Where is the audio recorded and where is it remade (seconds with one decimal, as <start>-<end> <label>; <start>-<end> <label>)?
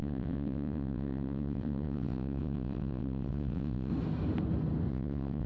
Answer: 0.0-3.9 remade; 3.9-4.9 recorded; 4.9-5.5 remade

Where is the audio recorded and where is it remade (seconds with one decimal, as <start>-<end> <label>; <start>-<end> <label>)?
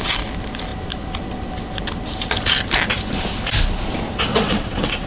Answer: 0.0-4.3 recorded; 4.3-5.1 remade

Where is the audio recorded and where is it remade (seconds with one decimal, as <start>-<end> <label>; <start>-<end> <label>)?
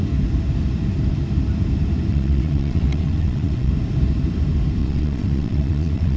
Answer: 0.0-2.1 recorded; 2.1-3.7 remade; 3.7-4.8 recorded; 4.8-6.2 remade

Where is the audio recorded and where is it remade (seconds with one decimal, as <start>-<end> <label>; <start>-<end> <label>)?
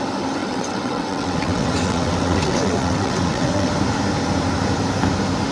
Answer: 0.0-0.4 recorded; 0.4-3.7 remade; 3.7-5.5 recorded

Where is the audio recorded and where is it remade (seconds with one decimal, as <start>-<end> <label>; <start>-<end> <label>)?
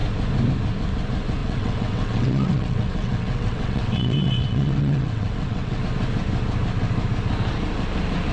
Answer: 0.0-1.4 recorded; 1.4-5.8 remade; 5.8-8.3 recorded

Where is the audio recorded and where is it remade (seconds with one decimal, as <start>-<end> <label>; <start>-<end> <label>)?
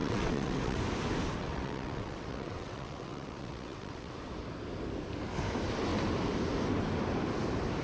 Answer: 0.0-0.8 remade; 0.8-1.4 recorded; 1.4-4.1 remade; 4.1-7.8 recorded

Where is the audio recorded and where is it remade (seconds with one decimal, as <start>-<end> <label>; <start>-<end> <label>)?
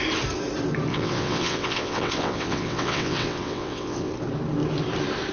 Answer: 0.0-0.9 recorded; 0.9-4.1 remade; 4.1-5.3 recorded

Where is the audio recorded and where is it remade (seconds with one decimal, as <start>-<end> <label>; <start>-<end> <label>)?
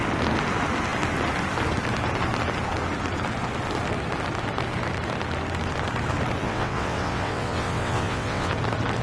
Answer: 0.0-6.4 recorded; 6.4-8.5 remade; 8.5-9.0 recorded